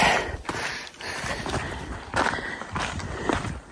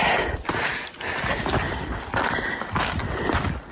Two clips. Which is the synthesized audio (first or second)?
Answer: first